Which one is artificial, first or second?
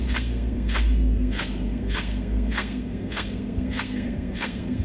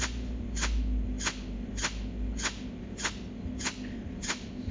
first